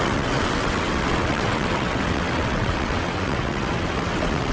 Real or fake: fake